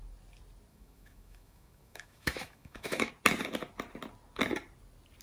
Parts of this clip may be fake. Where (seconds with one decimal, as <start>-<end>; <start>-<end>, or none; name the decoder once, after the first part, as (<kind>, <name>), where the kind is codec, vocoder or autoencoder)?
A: 0.7-3.1 (autoencoder, DAC-VAE)